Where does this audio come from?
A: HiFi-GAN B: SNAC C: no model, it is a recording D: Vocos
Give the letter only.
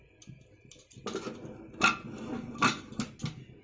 C